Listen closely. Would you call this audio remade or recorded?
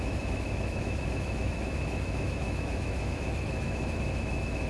remade